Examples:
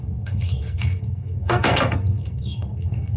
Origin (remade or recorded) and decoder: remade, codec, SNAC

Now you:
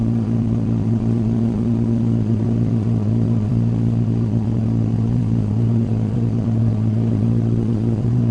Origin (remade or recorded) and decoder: remade, vocoder, Vocos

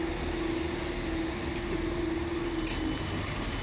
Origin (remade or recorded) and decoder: recorded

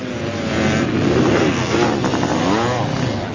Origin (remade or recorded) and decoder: recorded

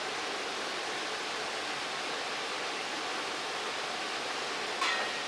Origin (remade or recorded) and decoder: recorded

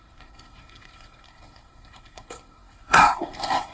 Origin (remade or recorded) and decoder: remade, codec, SNAC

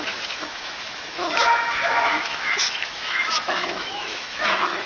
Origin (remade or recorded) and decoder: remade, autoencoder, DAC-VAE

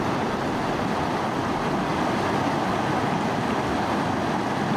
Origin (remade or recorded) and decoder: recorded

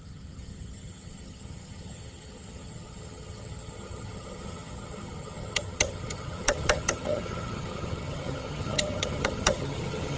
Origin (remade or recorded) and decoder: remade, vocoder, HiFi-GAN